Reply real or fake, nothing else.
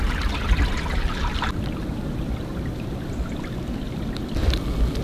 real